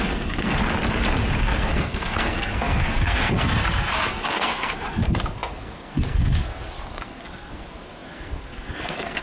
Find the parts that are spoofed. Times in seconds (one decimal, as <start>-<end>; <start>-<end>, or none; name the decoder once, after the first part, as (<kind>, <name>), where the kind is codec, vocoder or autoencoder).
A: 0.0-0.6 (codec, SNAC); 1.4-9.2